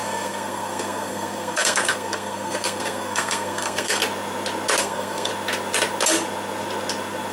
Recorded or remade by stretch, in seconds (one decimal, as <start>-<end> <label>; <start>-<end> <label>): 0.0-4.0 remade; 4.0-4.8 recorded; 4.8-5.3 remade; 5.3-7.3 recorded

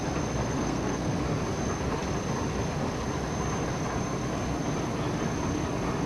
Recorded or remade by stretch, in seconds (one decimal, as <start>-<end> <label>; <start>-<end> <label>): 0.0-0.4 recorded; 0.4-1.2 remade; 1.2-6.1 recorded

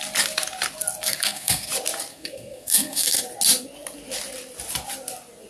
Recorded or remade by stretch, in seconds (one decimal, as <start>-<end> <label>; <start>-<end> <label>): 0.0-1.0 recorded; 1.0-1.7 remade; 1.7-2.1 recorded; 2.1-3.2 remade; 3.2-5.5 recorded

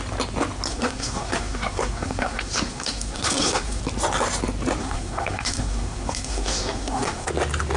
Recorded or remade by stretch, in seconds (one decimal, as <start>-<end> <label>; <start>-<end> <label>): 0.0-0.7 recorded; 0.7-3.8 remade; 3.8-4.8 recorded; 4.8-7.3 remade; 7.3-7.8 recorded

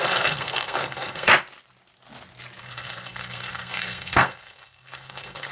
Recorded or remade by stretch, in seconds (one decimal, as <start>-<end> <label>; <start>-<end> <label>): 0.0-1.3 remade; 1.3-2.6 recorded; 2.6-5.5 remade